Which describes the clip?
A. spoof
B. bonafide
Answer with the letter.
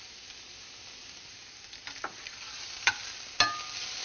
B